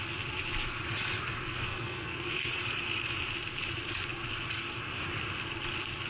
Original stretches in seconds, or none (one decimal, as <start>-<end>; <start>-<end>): 0.0-1.3; 2.6-6.1